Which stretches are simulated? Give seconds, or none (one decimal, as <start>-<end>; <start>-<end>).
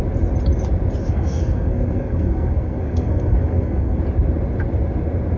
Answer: 1.0-4.0